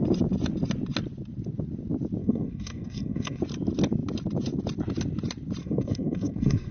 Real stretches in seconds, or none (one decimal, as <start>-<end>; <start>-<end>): 0.0-2.2; 3.4-5.6